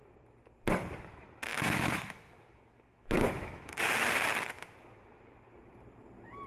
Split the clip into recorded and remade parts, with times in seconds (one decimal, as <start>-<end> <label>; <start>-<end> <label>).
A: 0.0-1.5 recorded; 1.5-3.8 remade; 3.8-6.5 recorded